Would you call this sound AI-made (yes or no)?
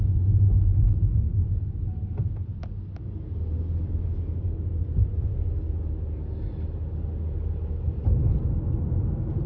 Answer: no